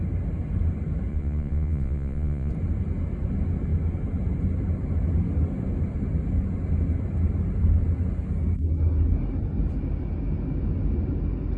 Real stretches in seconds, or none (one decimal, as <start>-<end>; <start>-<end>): 0.0-1.1; 2.5-11.6